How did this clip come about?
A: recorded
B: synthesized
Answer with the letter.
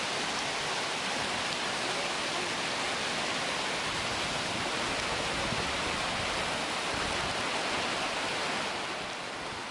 A